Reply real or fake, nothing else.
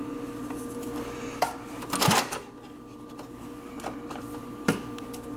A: real